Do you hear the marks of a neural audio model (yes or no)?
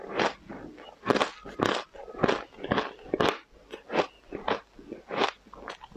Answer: no